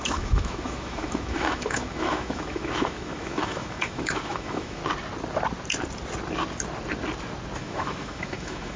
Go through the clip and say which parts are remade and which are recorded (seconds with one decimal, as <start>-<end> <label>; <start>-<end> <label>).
0.0-4.8 remade; 4.8-7.6 recorded; 7.6-8.8 remade